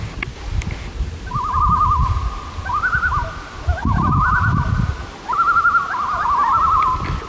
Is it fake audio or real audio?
real